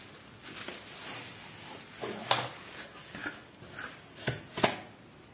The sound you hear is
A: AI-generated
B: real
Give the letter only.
B